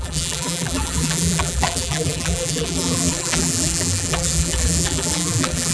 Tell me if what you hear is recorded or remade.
remade